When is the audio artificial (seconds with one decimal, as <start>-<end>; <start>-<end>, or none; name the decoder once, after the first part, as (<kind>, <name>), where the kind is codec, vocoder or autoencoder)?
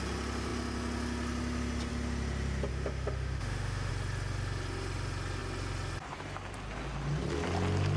2.7-3.9 (autoencoder, DAC-VAE)